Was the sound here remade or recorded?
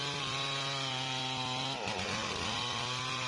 recorded